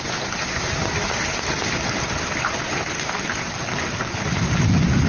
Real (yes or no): no